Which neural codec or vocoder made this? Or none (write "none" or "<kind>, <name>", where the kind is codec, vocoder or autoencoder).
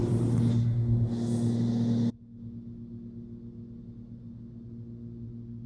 none